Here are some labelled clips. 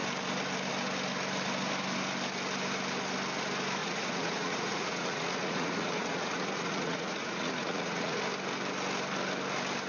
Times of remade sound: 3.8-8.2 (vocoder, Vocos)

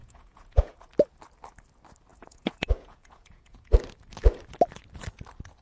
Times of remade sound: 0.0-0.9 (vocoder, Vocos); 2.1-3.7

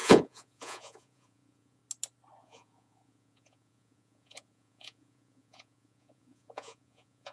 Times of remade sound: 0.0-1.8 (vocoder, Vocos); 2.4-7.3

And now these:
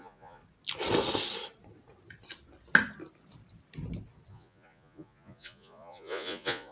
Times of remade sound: 0.0-0.4 (vocoder, Vocos); 4.3-6.7